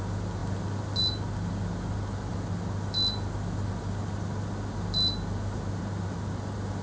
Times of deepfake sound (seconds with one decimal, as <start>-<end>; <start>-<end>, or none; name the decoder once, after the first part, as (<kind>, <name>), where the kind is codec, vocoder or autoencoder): none